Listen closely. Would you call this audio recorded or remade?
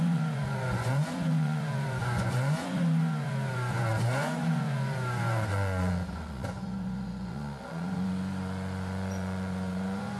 remade